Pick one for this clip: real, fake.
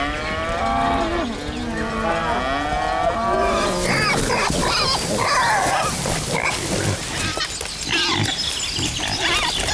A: real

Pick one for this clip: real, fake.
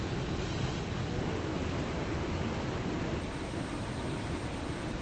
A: real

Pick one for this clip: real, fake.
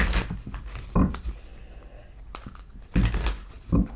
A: real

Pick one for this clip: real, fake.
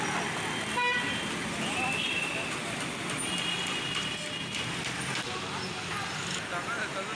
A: real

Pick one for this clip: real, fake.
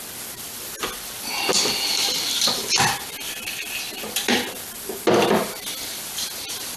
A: real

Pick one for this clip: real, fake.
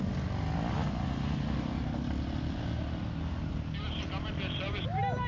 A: real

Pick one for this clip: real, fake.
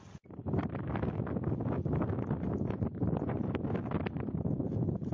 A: real